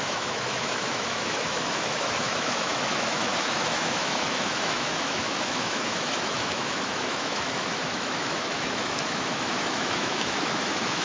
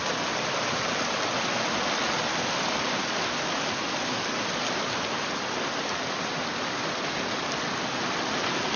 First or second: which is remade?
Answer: first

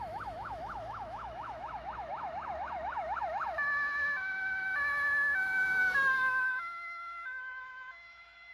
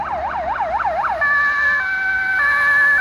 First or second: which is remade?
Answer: first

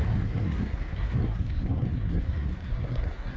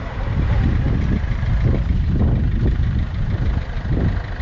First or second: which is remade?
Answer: first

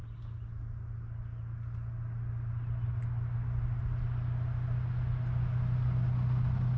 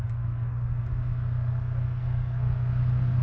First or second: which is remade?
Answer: second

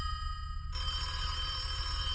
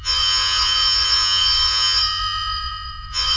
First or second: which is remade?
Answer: second